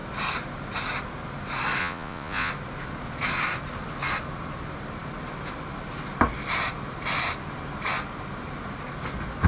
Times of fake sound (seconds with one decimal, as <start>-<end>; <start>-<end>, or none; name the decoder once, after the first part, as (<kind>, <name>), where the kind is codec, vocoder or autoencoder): 1.8-2.5 (vocoder, Vocos)